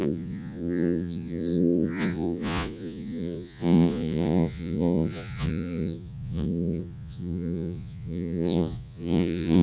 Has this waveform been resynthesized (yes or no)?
yes